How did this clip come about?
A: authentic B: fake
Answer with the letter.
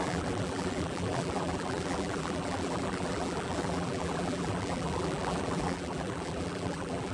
B